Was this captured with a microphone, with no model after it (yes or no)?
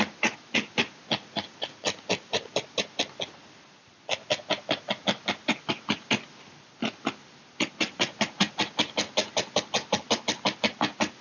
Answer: yes